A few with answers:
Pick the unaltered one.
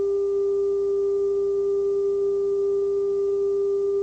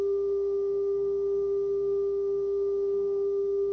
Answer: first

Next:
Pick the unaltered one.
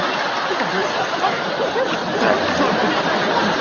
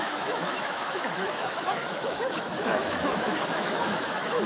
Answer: first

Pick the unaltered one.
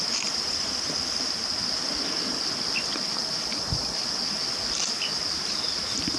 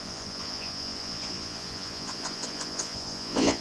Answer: first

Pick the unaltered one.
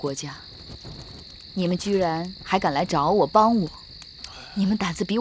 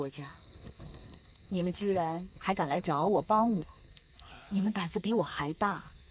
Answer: first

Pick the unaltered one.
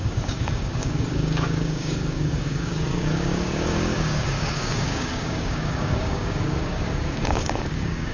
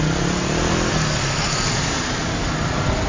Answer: second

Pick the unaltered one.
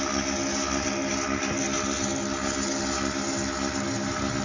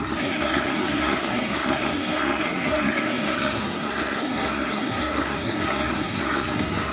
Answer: first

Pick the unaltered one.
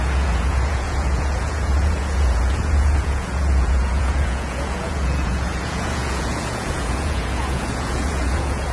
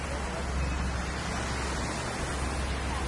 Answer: second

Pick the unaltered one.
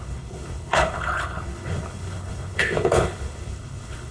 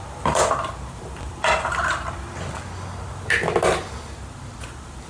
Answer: second